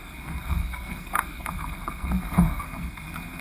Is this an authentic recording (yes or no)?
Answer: no